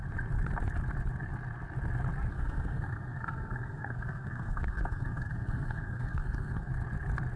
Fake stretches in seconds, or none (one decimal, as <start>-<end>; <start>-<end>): 2.3-6.7